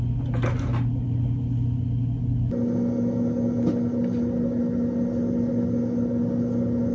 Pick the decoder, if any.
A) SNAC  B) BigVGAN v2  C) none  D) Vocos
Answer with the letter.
C